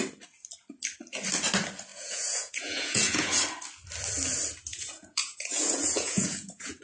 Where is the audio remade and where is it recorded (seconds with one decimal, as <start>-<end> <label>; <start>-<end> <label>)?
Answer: 0.0-1.9 recorded; 1.9-3.3 remade; 3.3-4.7 recorded; 4.7-6.8 remade